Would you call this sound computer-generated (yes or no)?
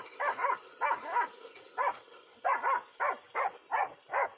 no